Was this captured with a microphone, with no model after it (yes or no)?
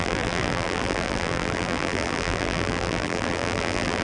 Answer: no